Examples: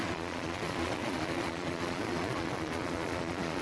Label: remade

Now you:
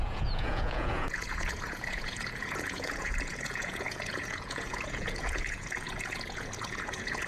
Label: remade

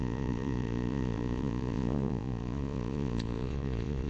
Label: remade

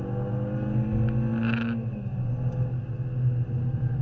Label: recorded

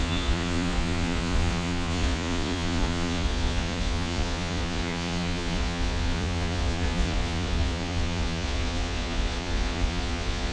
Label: remade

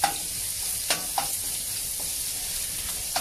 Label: recorded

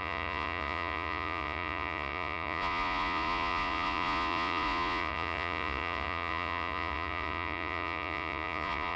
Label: remade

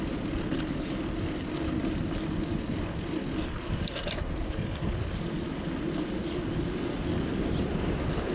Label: recorded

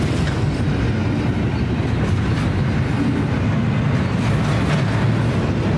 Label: recorded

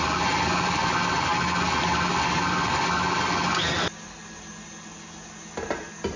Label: recorded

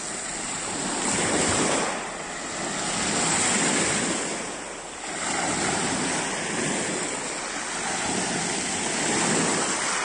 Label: recorded